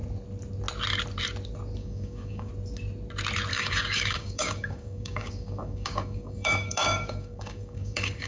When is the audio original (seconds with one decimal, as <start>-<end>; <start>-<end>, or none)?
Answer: 0.0-1.8; 2.5-3.5